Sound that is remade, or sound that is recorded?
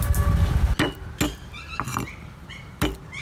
recorded